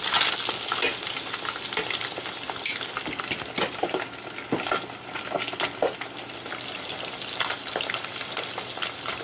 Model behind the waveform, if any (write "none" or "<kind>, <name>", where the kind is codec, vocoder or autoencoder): none